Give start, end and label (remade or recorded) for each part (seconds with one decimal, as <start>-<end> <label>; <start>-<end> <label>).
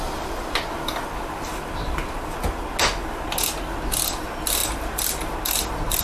0.0-6.0 recorded